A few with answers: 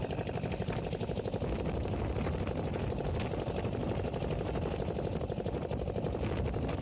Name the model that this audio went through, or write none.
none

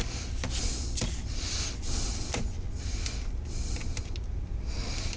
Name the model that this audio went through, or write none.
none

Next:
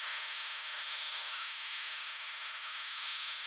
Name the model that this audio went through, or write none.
autoencoder, DAC-VAE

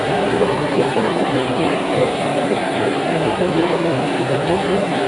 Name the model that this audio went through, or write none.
codec, SNAC